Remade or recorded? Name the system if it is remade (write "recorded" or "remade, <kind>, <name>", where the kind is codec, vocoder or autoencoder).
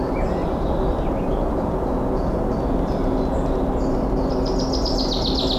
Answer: recorded